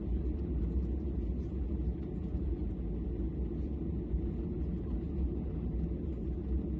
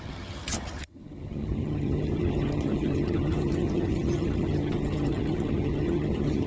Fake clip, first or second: second